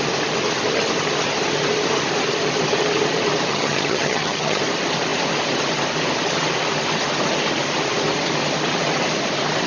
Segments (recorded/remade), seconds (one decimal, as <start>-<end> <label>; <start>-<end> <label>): 0.0-3.5 recorded; 3.5-4.6 remade; 4.6-9.7 recorded